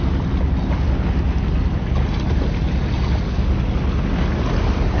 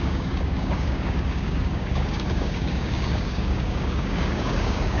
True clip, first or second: first